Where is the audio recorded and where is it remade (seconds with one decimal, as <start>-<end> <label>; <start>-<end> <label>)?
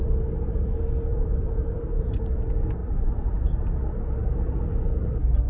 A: 0.0-1.1 recorded; 1.1-2.2 remade; 2.2-2.8 recorded; 2.8-3.5 remade; 3.5-5.5 recorded